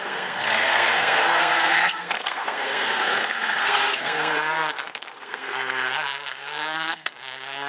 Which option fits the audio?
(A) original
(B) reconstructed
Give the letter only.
B